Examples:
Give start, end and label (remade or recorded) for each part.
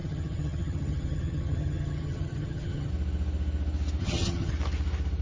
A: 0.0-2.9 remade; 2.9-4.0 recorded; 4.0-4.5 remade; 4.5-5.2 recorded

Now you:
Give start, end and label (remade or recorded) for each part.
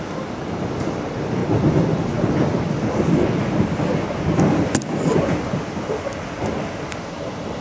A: 0.0-7.6 recorded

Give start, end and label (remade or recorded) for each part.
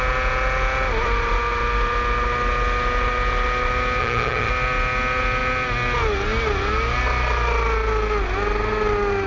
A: 0.0-4.0 recorded; 4.0-4.5 remade; 4.5-9.3 recorded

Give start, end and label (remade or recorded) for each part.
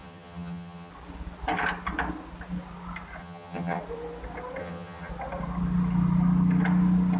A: 0.0-0.9 remade; 0.9-3.2 recorded; 3.2-3.8 remade; 3.8-4.6 recorded; 4.6-5.1 remade; 5.1-7.2 recorded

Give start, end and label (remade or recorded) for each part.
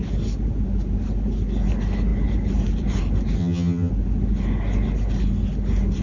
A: 0.0-3.4 recorded; 3.4-3.9 remade; 3.9-6.0 recorded